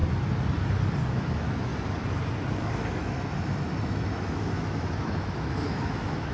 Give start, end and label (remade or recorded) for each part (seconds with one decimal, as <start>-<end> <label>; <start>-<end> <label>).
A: 0.0-1.1 recorded; 1.1-1.7 remade; 1.7-2.5 recorded; 2.5-6.3 remade